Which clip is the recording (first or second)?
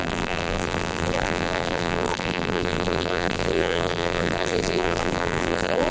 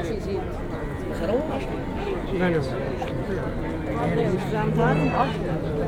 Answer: second